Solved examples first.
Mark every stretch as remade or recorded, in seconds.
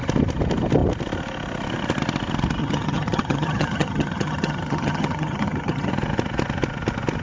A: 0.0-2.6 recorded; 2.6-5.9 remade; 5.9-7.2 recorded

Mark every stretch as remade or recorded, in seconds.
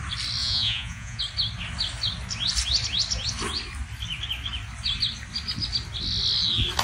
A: 0.0-0.4 recorded; 0.4-1.2 remade; 1.2-6.8 recorded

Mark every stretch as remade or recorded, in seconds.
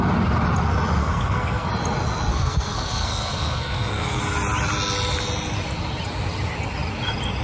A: 0.0-1.0 recorded; 1.0-1.7 remade; 1.7-2.3 recorded; 2.3-4.2 remade; 4.2-7.4 recorded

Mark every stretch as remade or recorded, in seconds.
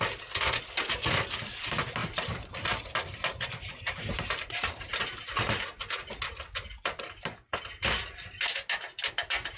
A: 0.0-2.0 recorded; 2.0-4.9 remade; 4.9-9.6 recorded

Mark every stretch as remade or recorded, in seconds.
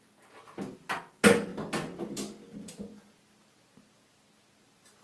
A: 0.0-5.0 recorded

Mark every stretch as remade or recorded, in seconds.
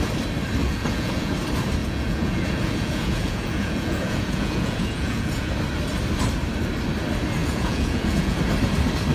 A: 0.0-0.6 recorded; 0.6-1.3 remade; 1.3-1.8 recorded; 1.8-5.5 remade; 5.5-7.4 recorded; 7.4-8.4 remade; 8.4-9.1 recorded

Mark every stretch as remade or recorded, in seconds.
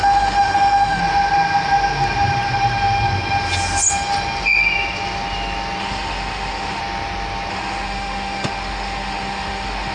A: 0.0-1.0 remade; 1.0-5.8 recorded; 5.8-6.8 remade; 6.8-7.5 recorded; 7.5-9.9 remade